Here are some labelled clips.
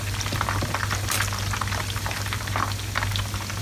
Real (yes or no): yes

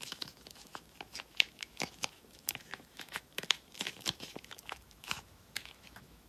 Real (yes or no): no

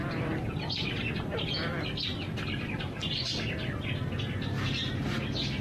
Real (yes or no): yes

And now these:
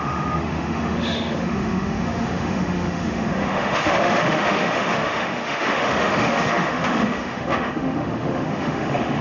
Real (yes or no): no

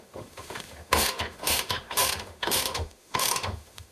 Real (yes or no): no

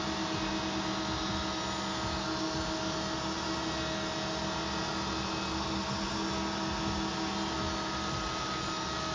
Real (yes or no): yes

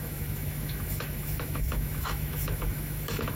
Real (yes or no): no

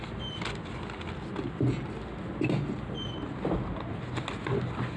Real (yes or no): yes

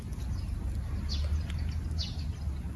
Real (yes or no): yes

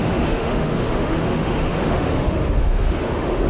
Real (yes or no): no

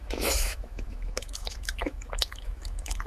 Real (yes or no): no